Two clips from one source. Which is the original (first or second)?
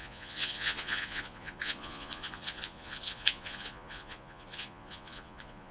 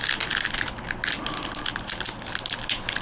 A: second